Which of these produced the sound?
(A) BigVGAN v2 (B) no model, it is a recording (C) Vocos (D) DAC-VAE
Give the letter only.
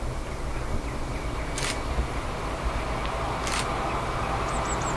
B